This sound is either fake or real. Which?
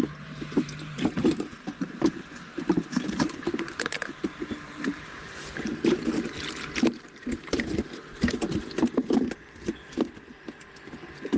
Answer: fake